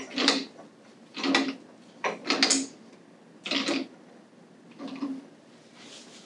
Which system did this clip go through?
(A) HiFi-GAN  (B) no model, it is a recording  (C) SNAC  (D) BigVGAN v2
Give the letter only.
B